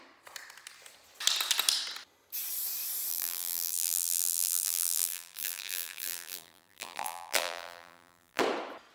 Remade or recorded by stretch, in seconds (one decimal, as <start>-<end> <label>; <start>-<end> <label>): 0.0-3.1 recorded; 3.1-8.4 remade; 8.4-8.9 recorded